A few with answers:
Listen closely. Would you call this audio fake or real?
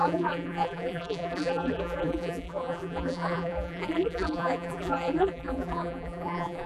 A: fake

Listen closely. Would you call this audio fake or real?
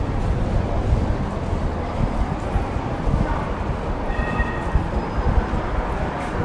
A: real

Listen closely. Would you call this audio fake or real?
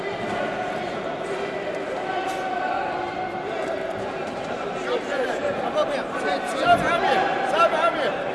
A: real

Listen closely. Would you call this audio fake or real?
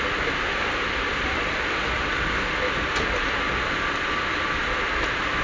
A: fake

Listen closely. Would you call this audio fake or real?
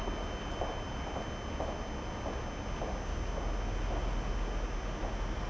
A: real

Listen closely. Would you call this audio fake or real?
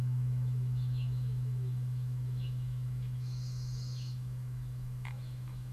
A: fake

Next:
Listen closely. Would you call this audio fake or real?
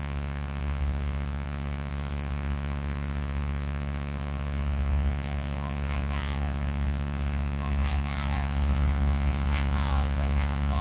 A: fake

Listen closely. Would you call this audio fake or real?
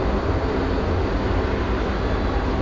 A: real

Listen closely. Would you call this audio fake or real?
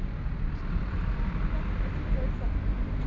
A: real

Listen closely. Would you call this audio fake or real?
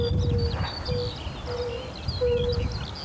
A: real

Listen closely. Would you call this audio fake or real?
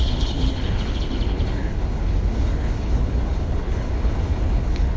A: fake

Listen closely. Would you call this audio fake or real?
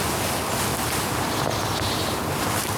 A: real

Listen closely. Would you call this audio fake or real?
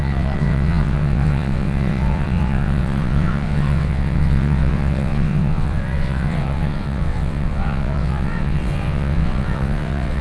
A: fake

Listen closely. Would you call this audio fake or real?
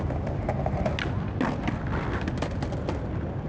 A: real